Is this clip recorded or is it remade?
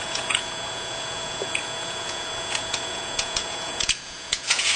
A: remade